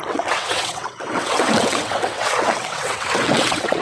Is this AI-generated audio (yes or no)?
yes